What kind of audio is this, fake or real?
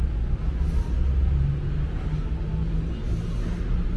real